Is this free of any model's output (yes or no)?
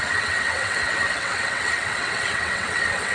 no